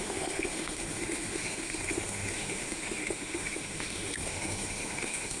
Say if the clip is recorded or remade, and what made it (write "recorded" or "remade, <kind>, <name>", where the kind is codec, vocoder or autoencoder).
remade, autoencoder, DAC-VAE